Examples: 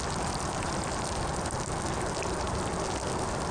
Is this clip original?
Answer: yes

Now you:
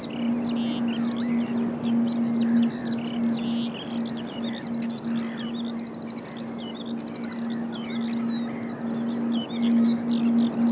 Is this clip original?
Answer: yes